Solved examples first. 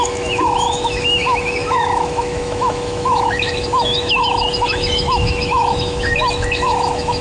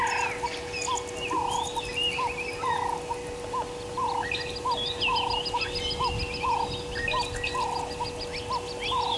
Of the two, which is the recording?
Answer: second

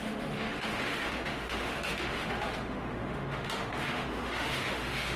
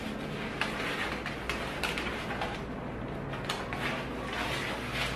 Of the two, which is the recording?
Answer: second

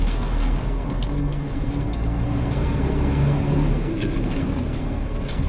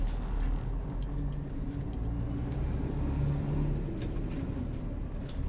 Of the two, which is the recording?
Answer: second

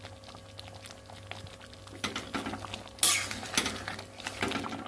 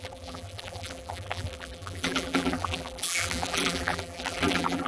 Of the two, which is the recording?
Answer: first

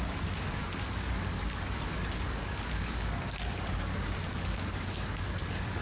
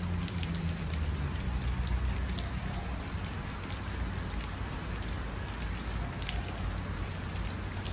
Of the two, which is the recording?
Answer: second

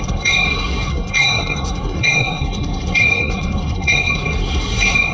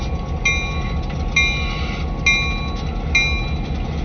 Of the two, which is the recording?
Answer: second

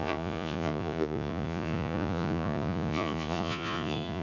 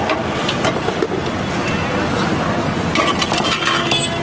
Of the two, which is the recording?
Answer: second